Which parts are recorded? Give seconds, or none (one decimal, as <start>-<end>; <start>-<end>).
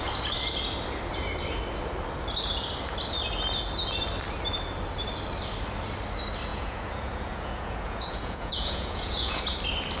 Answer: 0.0-6.5; 9.4-10.0